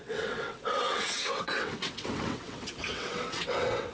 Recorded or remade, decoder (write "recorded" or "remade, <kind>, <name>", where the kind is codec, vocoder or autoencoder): remade, vocoder, WaveNeXt